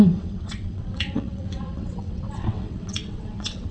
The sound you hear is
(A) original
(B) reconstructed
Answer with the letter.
B